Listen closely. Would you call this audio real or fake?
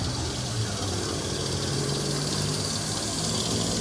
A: real